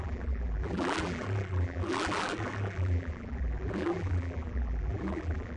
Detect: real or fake fake